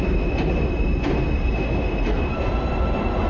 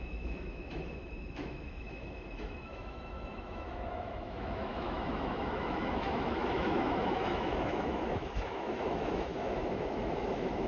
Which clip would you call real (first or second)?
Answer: first